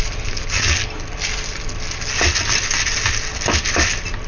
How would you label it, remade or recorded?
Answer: recorded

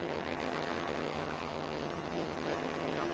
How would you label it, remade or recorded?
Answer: remade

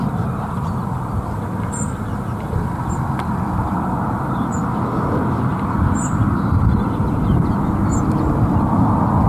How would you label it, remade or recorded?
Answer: recorded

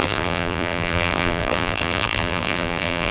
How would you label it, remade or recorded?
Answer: remade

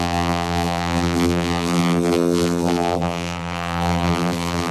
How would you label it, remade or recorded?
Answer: remade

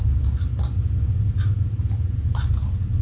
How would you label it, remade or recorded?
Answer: recorded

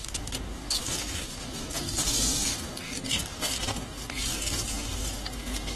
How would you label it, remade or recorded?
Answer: remade